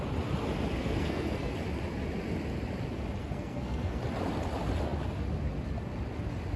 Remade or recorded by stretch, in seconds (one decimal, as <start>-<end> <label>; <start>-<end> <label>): 0.0-0.8 recorded; 0.8-1.5 remade; 1.5-3.2 recorded; 3.2-4.0 remade; 4.0-6.6 recorded